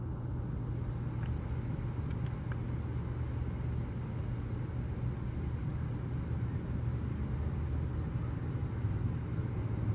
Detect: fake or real real